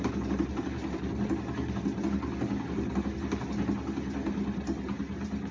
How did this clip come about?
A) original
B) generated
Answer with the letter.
A